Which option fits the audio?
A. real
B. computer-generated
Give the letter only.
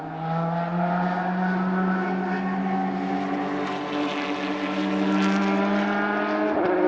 A